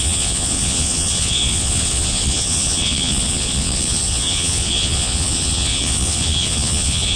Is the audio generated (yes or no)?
yes